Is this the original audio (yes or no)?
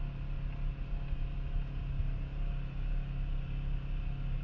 yes